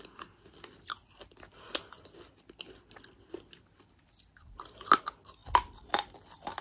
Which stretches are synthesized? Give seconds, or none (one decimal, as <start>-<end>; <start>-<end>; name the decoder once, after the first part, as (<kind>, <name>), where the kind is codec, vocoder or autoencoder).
none